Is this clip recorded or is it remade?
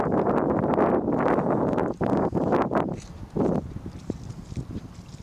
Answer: recorded